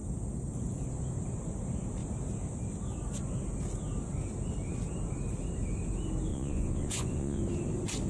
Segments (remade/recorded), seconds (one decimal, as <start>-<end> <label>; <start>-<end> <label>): 0.0-6.3 recorded; 6.3-7.4 remade; 7.4-8.1 recorded

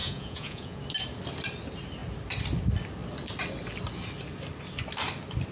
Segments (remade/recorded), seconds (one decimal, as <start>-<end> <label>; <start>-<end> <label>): 0.0-0.8 remade; 0.8-5.5 recorded

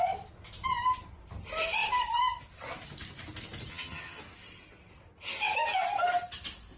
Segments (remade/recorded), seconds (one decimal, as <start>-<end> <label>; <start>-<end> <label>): 0.0-3.7 recorded; 3.7-4.2 remade; 4.2-6.8 recorded

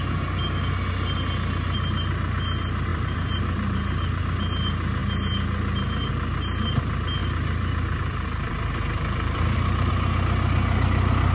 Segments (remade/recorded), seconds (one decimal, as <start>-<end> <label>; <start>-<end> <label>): 0.0-2.9 recorded; 2.9-4.2 remade; 4.2-7.2 recorded; 7.2-9.9 remade; 9.9-11.3 recorded